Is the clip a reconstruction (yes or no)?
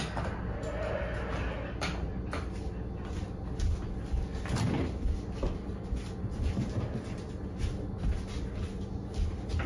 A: no